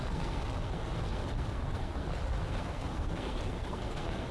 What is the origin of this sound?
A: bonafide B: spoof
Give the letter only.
B